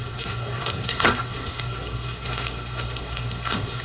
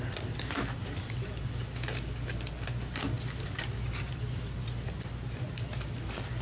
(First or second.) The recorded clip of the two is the second